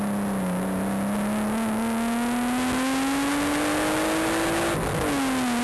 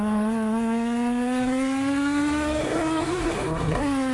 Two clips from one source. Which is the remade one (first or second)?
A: second